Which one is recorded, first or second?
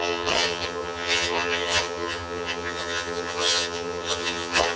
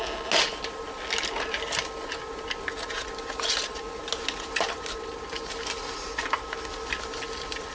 second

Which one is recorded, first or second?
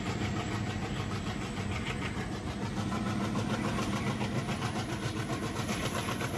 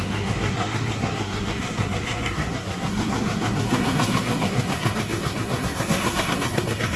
first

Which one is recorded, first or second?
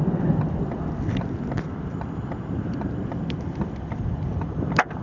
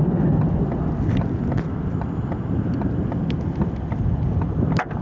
second